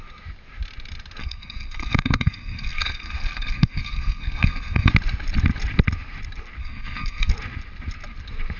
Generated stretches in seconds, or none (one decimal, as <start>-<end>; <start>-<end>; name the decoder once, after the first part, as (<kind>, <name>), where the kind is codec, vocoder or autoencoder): 1.2-4.9 (codec, SNAC); 6.6-7.3

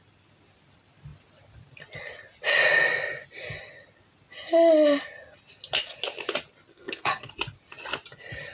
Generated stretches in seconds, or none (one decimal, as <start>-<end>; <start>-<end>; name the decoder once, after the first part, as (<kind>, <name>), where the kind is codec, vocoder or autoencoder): 6.7-7.3 (codec, SNAC)